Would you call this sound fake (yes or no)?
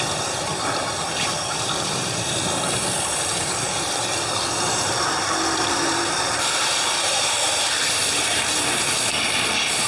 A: yes